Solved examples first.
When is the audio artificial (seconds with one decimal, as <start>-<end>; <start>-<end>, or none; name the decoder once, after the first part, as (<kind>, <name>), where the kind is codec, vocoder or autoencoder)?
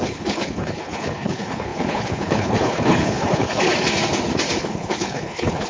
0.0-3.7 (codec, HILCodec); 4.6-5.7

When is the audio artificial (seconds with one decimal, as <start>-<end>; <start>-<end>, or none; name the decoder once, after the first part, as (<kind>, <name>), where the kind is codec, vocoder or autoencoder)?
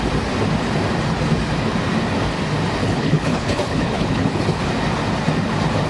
2.8-4.4 (codec, HILCodec)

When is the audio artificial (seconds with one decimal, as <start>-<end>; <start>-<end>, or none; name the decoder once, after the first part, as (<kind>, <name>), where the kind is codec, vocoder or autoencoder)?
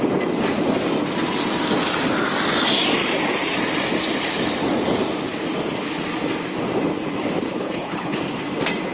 7.5-8.2 (codec, HILCodec)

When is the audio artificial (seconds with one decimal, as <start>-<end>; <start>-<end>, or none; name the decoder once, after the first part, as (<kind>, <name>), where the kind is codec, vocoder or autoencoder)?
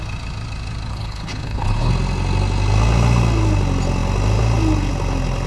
0.9-1.9 (codec, HILCodec)